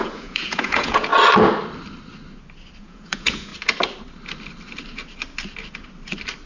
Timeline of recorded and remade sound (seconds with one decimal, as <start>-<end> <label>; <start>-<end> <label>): 0.0-1.1 remade; 1.1-2.8 recorded; 2.8-3.5 remade; 3.5-6.5 recorded

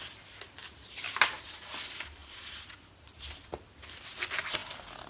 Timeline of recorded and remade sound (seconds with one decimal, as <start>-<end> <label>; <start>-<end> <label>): 0.0-5.1 recorded

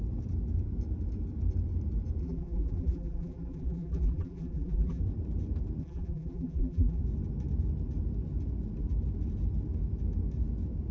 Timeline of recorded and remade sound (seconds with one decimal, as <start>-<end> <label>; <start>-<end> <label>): 0.0-2.2 recorded; 2.2-5.0 remade; 5.0-5.8 recorded; 5.8-7.0 remade; 7.0-10.9 recorded